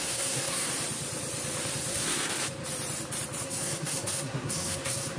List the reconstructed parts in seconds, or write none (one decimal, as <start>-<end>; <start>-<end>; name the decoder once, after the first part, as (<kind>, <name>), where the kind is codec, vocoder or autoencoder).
0.0-0.7 (codec, SNAC); 1.9-2.3; 3.4-5.2

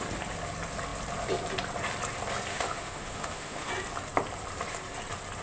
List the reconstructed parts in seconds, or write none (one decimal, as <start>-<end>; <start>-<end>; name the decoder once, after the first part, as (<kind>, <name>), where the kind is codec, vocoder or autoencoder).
2.5-3.7 (autoencoder, DAC-VAE)

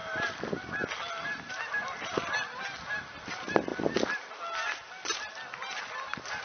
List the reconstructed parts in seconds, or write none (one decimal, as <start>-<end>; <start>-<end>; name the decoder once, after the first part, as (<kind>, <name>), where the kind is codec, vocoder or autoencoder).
none

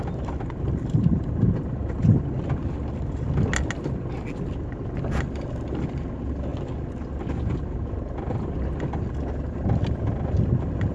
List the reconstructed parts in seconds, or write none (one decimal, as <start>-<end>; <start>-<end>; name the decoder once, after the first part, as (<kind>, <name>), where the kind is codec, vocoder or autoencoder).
none

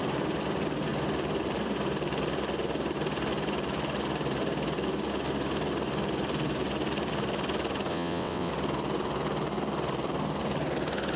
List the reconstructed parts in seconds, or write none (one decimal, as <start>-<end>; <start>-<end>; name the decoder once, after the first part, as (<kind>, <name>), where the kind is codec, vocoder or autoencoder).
7.9-8.5 (vocoder, WaveNeXt)

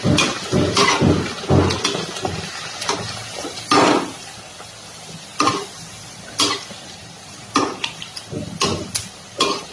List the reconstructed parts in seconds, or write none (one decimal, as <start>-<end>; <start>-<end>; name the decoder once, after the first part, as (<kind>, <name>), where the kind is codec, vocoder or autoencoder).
none